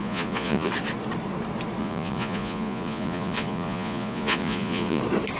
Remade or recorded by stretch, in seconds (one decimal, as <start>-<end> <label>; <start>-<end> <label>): 0.0-0.7 remade; 0.7-1.8 recorded; 1.8-5.0 remade; 5.0-5.4 recorded